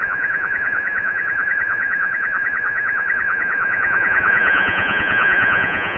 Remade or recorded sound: remade